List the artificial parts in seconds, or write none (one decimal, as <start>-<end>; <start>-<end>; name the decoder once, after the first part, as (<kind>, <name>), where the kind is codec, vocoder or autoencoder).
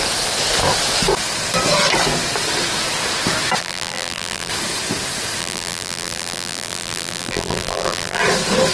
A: 3.6-4.5 (vocoder, BigVGAN v2); 5.4-8.2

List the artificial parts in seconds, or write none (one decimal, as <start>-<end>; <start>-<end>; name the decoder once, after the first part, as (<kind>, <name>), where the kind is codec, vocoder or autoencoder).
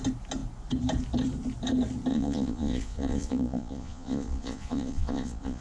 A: 2.1-5.6 (vocoder, Vocos)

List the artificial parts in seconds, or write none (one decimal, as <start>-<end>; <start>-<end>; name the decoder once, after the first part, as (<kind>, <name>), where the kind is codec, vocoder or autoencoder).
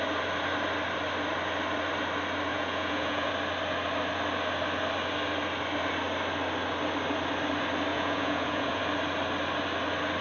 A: 2.5-3.3 (vocoder, Vocos); 7.9-8.8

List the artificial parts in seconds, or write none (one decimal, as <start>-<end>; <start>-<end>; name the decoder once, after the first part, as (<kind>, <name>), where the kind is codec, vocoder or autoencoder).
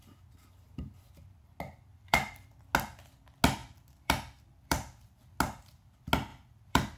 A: 1.9-2.5 (vocoder, BigVGAN v2); 3.6-5.3; 6.3-7.0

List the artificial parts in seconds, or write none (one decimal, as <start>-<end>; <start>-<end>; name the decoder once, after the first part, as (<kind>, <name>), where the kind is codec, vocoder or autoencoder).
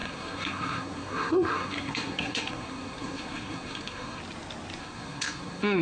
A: 0.0-4.2 (codec, SNAC); 4.8-5.8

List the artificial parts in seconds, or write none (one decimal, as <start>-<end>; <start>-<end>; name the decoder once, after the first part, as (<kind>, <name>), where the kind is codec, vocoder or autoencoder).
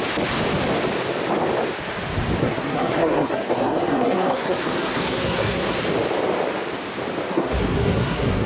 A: 2.4-5.8 (codec, SNAC); 7.3-8.5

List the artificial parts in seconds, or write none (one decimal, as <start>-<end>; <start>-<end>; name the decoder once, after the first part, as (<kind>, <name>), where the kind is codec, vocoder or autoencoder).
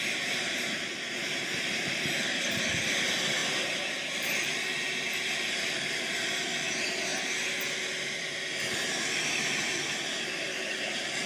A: 0.0-7.1 (vocoder, BigVGAN v2); 9.9-11.3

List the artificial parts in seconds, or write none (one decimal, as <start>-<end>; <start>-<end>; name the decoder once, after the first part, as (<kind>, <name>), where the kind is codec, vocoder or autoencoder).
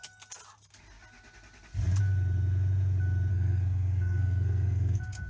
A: 3.3-5.3 (codec, SNAC)